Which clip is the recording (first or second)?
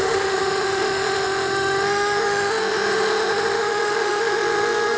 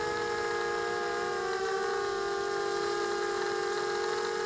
second